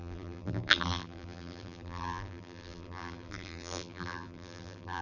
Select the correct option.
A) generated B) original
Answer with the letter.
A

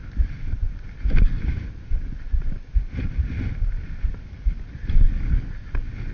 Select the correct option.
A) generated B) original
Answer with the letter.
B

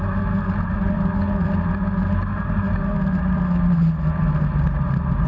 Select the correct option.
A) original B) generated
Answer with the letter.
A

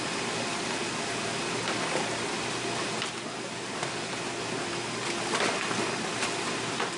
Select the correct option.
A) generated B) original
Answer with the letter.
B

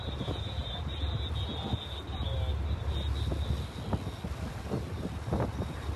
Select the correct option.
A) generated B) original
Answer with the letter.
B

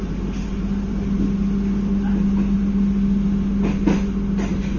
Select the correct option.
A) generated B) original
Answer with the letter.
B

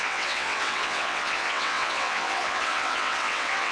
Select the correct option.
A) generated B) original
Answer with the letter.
A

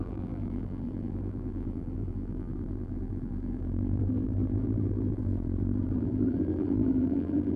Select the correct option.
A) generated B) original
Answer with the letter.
A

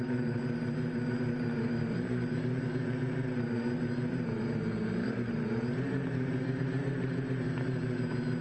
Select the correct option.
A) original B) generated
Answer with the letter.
B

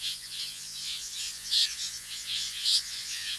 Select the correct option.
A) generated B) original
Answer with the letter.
A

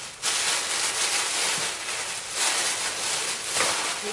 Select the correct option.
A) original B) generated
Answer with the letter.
A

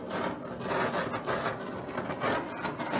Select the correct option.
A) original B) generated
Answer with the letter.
A